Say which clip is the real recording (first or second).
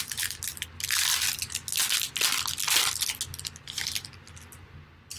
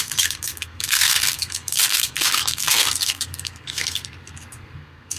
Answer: first